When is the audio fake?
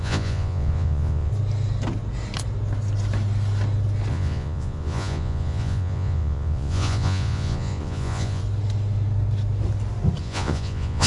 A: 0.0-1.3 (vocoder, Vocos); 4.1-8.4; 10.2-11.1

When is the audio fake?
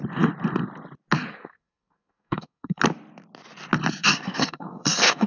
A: 1.3-2.8 (codec, SNAC); 4.0-5.3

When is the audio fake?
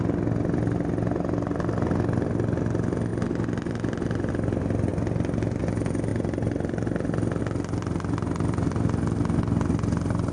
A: none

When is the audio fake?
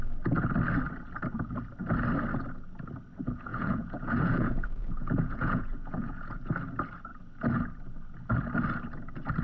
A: 3.5-6.5 (vocoder, Vocos)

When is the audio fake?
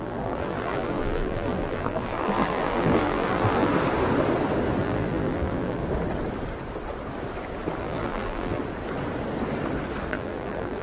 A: 0.0-3.7 (vocoder, BigVGAN v2); 4.8-5.8; 7.8-8.6; 10.1-10.8